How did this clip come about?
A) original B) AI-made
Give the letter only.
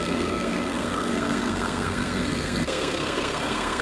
B